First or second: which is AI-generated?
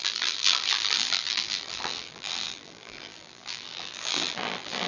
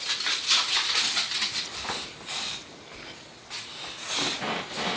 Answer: first